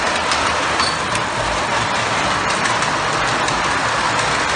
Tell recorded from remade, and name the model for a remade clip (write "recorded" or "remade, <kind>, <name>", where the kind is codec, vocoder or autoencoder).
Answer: recorded